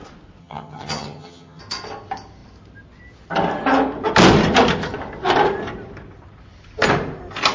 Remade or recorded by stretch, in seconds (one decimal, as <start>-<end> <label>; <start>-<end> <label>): 0.0-0.4 recorded; 0.4-1.6 remade; 1.6-7.5 recorded